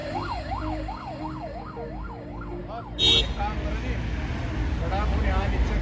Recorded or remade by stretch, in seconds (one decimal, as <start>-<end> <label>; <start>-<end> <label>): 0.0-2.6 remade; 2.6-5.8 recorded